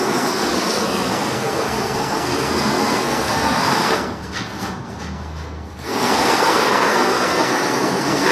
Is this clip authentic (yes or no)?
no